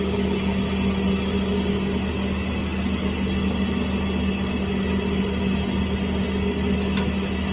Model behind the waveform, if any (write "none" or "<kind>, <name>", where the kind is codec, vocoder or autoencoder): none